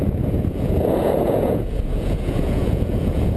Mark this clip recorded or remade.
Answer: remade